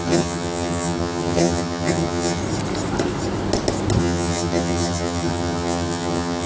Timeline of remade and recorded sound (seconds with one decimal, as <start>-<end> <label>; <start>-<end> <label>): 0.0-2.4 remade; 2.4-4.0 recorded; 4.0-6.5 remade